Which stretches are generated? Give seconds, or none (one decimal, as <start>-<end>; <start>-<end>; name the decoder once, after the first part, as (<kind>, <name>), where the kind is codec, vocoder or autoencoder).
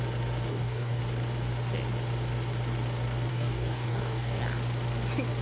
0.5-1.0 (codec, DAC); 3.3-4.4